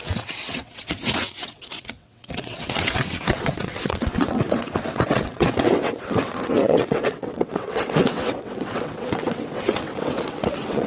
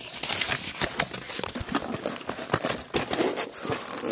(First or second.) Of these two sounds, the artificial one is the first